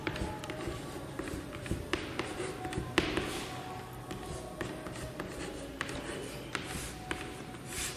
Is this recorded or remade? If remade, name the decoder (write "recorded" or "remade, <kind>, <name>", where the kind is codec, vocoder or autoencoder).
recorded